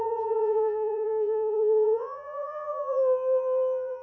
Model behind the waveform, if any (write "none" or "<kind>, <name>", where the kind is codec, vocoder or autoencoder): vocoder, Vocos